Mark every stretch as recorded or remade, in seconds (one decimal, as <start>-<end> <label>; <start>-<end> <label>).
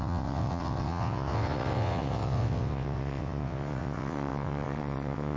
0.0-5.4 remade